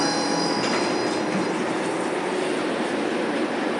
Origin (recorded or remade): recorded